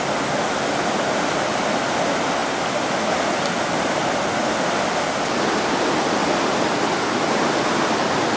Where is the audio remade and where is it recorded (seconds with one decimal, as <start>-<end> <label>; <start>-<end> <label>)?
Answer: 0.0-8.4 recorded